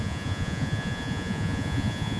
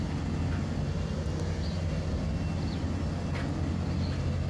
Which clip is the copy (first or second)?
first